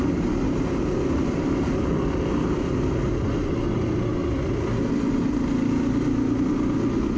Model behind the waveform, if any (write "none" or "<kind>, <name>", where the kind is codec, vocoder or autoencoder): none